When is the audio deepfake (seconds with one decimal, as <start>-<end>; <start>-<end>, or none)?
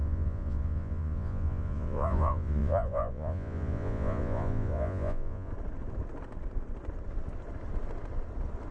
0.0-5.5